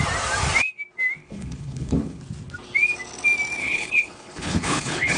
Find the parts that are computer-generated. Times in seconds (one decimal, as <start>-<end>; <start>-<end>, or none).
1.2-2.2; 3.6-5.2

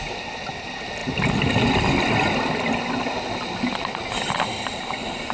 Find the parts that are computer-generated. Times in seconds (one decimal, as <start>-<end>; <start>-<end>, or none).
none

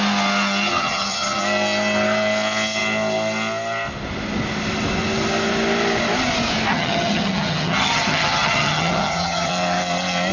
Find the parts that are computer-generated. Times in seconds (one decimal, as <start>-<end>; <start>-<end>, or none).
0.7-1.4; 6.7-9.5

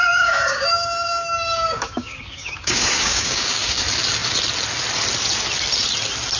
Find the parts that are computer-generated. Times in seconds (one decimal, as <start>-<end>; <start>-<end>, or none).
0.0-3.8

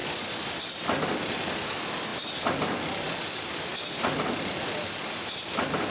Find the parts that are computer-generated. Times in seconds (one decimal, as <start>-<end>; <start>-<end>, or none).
none

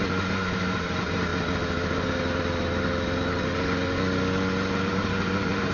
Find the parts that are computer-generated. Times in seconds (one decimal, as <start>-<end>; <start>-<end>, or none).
0.0-1.3; 4.7-5.7

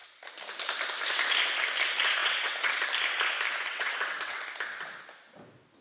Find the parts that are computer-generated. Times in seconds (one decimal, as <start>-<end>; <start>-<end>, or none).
2.2-2.8; 3.7-4.4

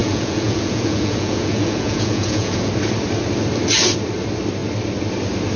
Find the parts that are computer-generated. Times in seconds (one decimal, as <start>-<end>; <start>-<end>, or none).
0.0-2.7